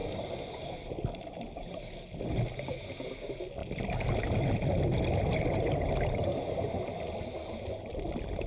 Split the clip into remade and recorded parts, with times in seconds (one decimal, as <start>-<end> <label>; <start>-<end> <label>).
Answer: 0.0-8.5 recorded